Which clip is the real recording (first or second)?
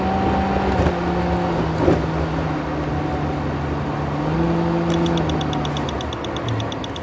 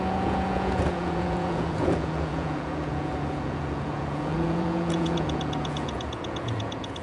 first